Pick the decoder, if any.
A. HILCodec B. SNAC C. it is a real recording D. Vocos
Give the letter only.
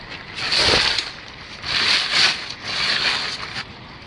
C